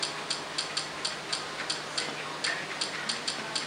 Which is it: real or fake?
real